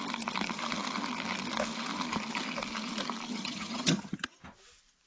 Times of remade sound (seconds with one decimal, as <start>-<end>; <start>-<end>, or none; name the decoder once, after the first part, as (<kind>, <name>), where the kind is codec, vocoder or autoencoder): 3.3-4.4 (vocoder, HiFi-GAN)